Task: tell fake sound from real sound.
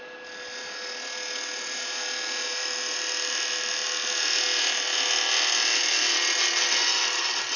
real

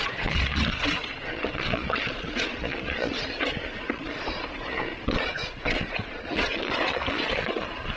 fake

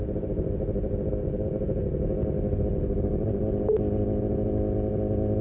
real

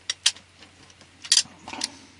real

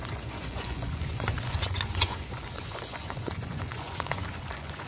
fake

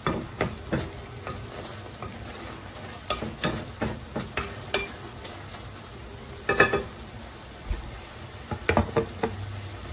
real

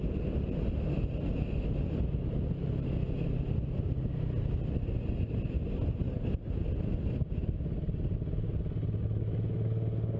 real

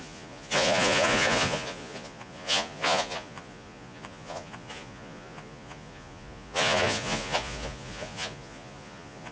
fake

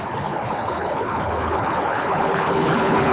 fake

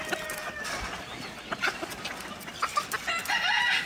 real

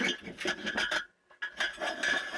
real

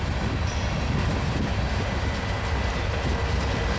real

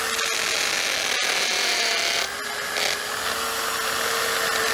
real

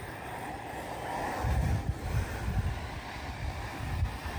real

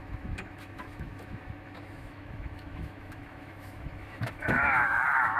fake